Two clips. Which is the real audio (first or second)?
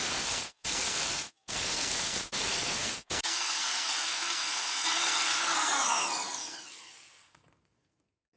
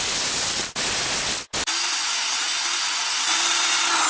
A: second